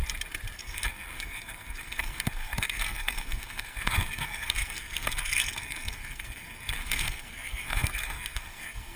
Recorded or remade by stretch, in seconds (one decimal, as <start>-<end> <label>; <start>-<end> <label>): 0.0-0.6 recorded; 0.6-9.0 remade